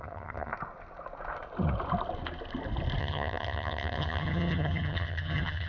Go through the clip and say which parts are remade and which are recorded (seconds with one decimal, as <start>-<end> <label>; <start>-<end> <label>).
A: 0.0-0.5 remade; 0.5-3.0 recorded; 3.0-5.7 remade